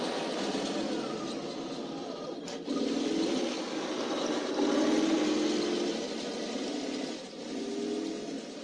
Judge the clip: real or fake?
real